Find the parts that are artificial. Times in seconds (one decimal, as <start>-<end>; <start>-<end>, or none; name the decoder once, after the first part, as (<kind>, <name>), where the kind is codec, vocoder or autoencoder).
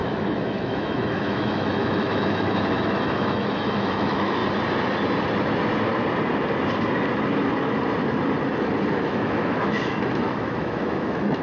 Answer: 0.0-4.4 (autoencoder, DAC-VAE); 8.9-11.4